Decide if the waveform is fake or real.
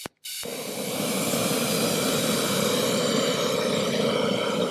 real